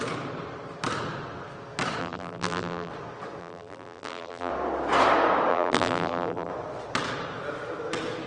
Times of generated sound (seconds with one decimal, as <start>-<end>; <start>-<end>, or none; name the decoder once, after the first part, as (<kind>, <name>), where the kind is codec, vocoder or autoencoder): 2.0-2.9 (vocoder, BigVGAN v2); 3.4-4.5; 5.5-6.5